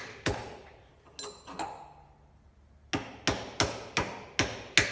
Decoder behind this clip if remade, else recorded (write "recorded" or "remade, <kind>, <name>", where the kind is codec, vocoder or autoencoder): recorded